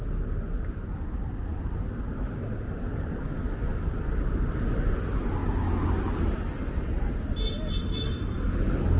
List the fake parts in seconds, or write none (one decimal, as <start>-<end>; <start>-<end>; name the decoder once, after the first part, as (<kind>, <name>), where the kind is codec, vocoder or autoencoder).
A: none